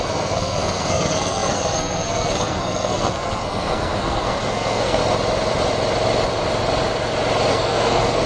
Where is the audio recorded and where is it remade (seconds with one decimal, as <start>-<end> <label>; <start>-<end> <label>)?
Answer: 0.0-5.0 remade; 5.0-7.5 recorded; 7.5-8.3 remade